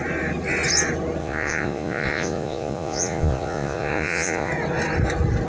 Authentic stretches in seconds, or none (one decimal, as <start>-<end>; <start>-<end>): 0.0-1.2; 4.5-5.5